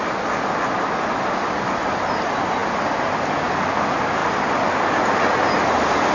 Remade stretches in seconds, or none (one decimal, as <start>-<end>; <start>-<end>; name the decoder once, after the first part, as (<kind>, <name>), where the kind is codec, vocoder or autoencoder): none